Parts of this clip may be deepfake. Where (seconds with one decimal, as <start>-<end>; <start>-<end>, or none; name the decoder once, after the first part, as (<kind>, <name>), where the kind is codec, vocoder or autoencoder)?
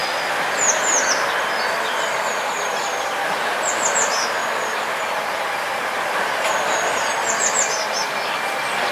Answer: none